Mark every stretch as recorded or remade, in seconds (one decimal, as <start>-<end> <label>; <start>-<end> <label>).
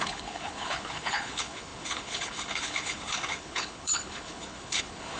0.0-5.2 remade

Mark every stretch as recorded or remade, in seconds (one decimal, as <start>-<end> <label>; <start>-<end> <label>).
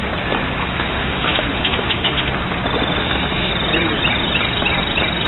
0.0-0.6 recorded; 0.6-2.3 remade; 2.3-3.0 recorded; 3.0-3.5 remade; 3.5-5.3 recorded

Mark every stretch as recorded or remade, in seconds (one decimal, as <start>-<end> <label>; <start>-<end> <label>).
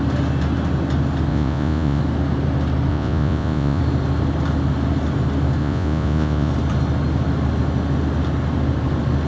0.0-1.3 recorded; 1.3-2.0 remade; 2.0-2.9 recorded; 2.9-3.8 remade; 3.8-5.6 recorded; 5.6-6.5 remade; 6.5-9.3 recorded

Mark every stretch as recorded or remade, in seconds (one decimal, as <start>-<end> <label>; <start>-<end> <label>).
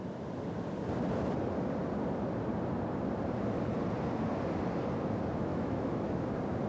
0.0-5.5 recorded; 5.5-6.2 remade; 6.2-6.7 recorded